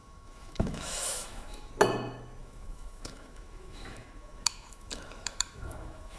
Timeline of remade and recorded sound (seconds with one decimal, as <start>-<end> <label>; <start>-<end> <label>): 0.0-1.7 remade; 1.7-2.4 recorded; 2.4-6.2 remade